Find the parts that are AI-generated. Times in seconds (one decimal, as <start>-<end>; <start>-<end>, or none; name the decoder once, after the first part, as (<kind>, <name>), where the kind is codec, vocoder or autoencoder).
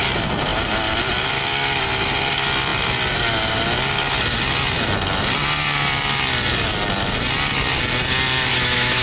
8.5-9.0 (autoencoder, DAC-VAE)